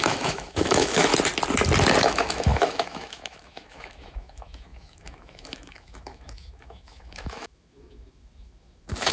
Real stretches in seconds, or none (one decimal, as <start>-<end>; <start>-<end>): 1.1-2.0